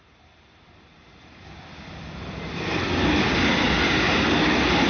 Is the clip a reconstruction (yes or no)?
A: no